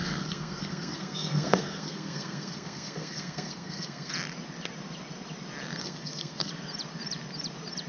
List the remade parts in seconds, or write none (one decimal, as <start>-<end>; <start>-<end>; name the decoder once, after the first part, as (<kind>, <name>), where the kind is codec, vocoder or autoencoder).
0.0-4.1 (codec, SNAC); 5.8-6.5